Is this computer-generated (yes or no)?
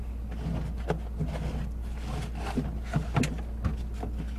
no